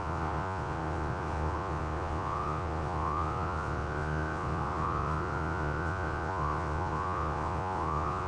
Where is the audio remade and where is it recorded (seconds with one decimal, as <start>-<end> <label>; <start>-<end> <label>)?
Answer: 0.0-8.3 remade